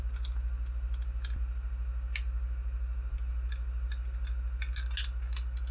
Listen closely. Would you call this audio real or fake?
real